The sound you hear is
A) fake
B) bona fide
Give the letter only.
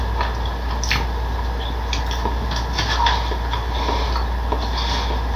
B